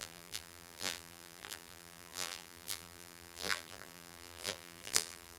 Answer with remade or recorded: remade